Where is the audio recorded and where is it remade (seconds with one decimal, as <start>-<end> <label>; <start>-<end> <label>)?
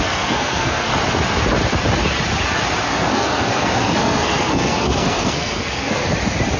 0.0-0.9 remade; 0.9-2.9 recorded; 2.9-6.0 remade; 6.0-6.6 recorded